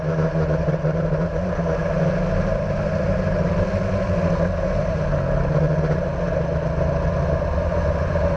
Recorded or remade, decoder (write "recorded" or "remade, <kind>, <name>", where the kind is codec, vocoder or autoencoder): recorded